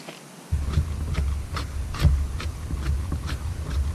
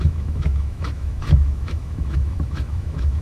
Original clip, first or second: first